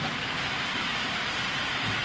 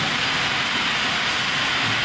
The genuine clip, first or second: second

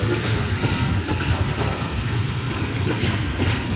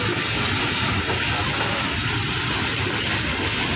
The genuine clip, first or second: second